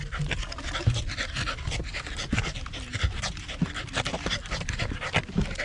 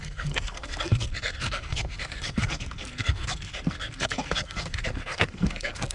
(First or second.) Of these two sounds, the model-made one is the second